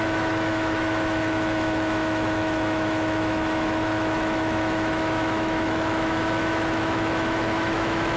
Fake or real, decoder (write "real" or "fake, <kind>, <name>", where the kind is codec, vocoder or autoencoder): fake, autoencoder, DAC-VAE